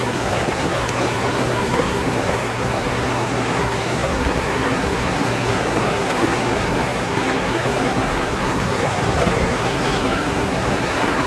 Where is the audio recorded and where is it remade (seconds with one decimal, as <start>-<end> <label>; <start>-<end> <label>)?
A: 0.0-11.3 remade